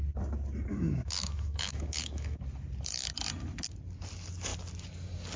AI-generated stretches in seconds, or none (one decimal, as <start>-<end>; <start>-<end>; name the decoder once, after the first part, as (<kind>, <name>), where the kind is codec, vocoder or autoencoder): 0.7-2.4 (autoencoder, DAC-VAE)

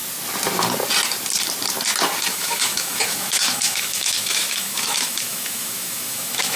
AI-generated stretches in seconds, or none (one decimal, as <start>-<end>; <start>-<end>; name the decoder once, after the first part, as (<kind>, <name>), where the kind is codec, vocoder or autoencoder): 2.3-6.6 (autoencoder, DAC-VAE)

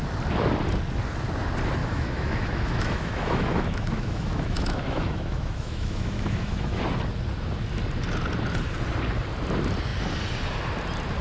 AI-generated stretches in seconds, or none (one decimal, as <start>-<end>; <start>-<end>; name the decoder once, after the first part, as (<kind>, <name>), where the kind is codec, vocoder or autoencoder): 1.8-6.8 (autoencoder, DAC-VAE)

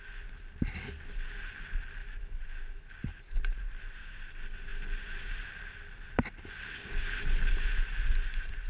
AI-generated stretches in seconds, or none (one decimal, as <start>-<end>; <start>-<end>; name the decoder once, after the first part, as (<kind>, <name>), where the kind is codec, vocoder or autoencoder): 2.0-2.9 (autoencoder, DAC-VAE)